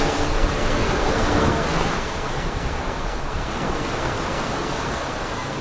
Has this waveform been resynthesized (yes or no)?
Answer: yes